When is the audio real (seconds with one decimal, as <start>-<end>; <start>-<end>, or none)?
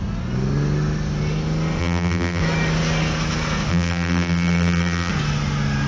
0.0-1.8; 2.4-3.7; 5.1-5.9